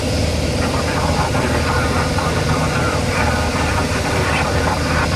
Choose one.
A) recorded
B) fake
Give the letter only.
B